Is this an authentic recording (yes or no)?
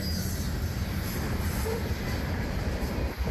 no